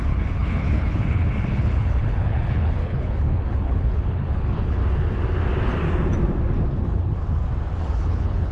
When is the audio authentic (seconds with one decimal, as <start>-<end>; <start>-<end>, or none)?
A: 4.8-6.8; 7.2-7.8

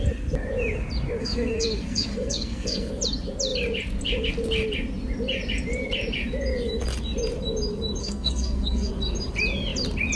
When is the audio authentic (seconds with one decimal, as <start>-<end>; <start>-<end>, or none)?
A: 0.0-1.2; 2.9-8.0; 8.9-10.2

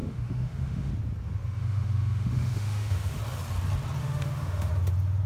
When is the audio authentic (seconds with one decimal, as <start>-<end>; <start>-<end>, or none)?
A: 0.9-1.6; 3.2-4.0; 4.7-5.3

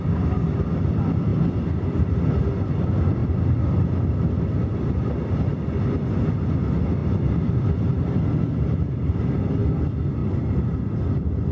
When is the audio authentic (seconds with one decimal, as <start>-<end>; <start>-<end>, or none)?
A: 0.0-1.3; 2.4-7.0; 8.3-11.5

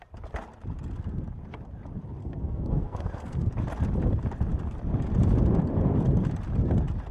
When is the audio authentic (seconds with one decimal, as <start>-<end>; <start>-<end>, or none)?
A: 0.0-2.2; 3.5-7.1

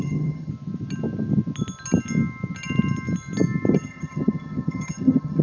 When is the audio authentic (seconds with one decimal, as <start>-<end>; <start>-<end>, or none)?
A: 0.5-3.7